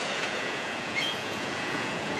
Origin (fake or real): fake